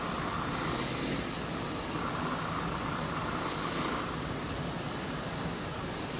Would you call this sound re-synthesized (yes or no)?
no